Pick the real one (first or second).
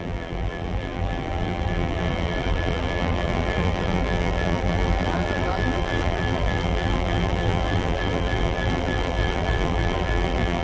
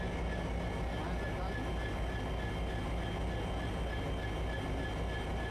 second